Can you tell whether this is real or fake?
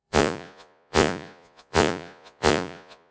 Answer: fake